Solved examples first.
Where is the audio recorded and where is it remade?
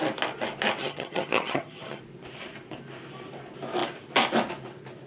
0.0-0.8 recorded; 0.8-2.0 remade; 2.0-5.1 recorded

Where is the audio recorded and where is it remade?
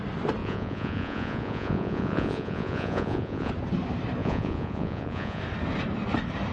0.0-0.4 recorded; 0.4-3.5 remade; 3.5-4.2 recorded; 4.2-5.4 remade; 5.4-6.5 recorded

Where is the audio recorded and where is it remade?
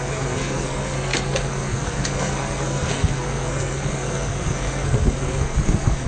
0.0-6.1 remade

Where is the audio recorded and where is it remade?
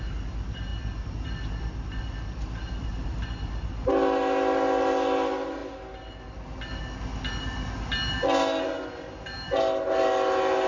0.0-10.7 recorded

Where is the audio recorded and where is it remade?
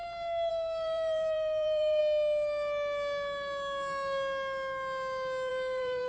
0.0-0.5 recorded; 0.5-2.0 remade; 2.0-5.5 recorded; 5.5-6.1 remade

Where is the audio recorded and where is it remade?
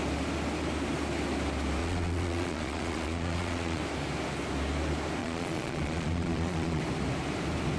0.0-1.8 recorded; 1.8-3.8 remade; 3.8-5.2 recorded; 5.2-6.8 remade; 6.8-7.8 recorded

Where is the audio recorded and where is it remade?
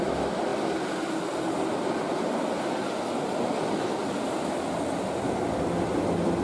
0.0-6.4 recorded